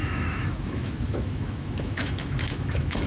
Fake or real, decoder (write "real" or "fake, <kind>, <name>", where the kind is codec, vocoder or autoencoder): fake, autoencoder, DAC-VAE